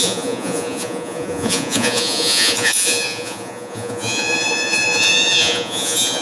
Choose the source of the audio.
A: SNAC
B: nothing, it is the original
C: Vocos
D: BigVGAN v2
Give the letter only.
C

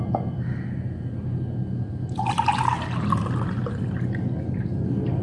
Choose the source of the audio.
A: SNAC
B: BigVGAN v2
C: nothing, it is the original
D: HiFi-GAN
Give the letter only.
C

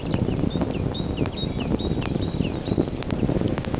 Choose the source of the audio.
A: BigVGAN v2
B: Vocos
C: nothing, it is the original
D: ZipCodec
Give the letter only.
C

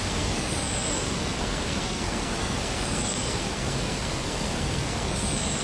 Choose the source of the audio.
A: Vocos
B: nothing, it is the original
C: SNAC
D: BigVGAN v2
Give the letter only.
C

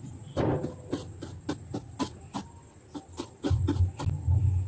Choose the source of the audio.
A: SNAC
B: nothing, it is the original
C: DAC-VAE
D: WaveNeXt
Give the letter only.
B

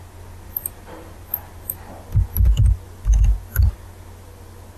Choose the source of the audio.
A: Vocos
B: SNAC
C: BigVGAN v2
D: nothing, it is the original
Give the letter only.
D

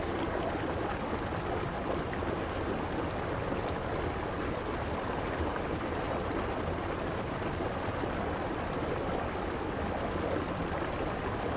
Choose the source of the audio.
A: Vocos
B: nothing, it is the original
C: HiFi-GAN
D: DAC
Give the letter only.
B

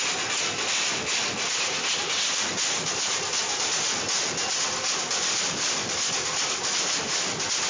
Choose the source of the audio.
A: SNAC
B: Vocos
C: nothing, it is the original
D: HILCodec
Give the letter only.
C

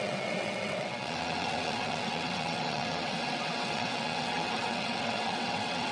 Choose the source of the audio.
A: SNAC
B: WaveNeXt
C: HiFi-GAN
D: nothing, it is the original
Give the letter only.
B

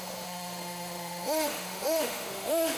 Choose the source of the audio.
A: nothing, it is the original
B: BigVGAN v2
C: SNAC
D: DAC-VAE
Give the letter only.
D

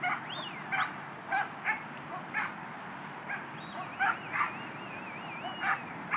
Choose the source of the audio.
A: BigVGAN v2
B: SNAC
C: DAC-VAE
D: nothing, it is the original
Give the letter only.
D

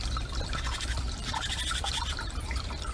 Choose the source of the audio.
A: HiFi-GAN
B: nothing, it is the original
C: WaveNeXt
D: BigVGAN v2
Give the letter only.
D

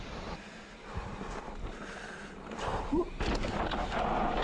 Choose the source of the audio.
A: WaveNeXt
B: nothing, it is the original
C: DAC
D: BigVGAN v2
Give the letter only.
B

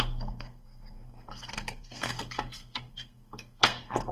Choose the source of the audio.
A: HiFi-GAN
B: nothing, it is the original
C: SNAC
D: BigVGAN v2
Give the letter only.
C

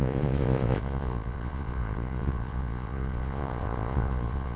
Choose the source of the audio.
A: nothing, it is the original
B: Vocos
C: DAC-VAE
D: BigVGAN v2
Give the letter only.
B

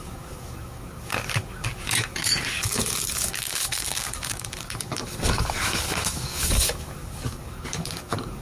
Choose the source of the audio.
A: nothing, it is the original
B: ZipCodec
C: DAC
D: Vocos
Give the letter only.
C